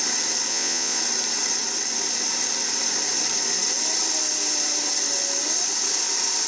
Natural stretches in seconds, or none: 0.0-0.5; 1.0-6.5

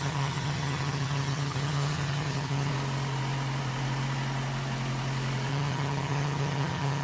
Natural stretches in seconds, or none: 2.7-5.5

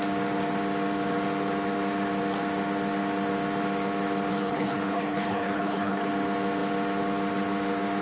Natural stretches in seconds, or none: 0.0-4.3; 6.1-8.0

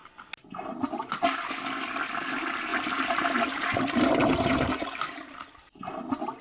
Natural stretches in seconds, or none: 0.0-2.7; 5.8-6.4

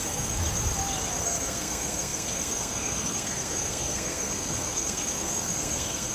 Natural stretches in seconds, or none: 0.4-1.2

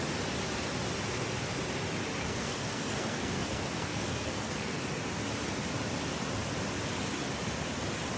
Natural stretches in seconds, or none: 0.0-2.2; 4.8-8.2

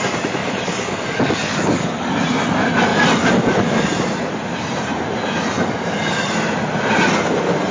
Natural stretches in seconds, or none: 0.0-0.4; 2.1-7.7